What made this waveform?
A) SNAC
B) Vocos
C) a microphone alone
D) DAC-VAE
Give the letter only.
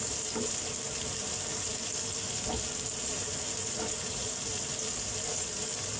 C